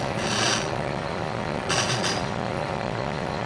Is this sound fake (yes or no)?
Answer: yes